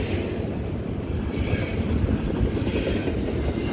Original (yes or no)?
yes